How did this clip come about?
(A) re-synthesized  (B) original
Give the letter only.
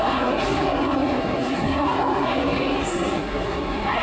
A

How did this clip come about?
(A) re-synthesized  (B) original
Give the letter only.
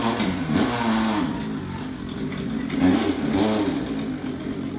B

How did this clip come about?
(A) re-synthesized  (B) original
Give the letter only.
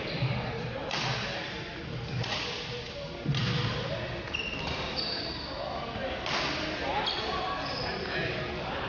B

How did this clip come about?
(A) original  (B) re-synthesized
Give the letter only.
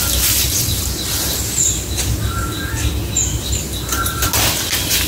A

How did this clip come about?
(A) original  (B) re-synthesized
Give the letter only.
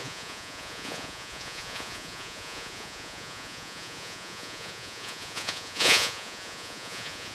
B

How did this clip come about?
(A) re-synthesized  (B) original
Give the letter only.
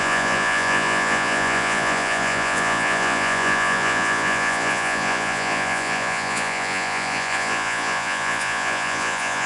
A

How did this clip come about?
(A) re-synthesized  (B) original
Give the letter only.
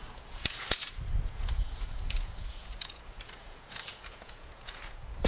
A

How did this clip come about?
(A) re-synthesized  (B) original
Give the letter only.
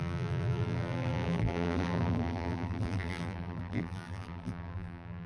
A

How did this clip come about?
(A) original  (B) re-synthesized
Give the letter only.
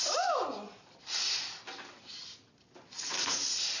A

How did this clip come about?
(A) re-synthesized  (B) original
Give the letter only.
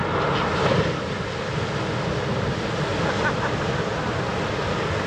B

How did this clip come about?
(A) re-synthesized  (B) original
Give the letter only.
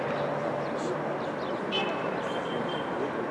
B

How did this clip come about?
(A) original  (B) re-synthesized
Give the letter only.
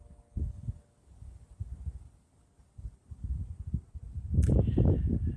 A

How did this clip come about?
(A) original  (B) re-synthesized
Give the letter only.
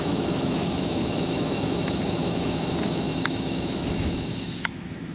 B